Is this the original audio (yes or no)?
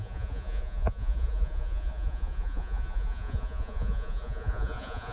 no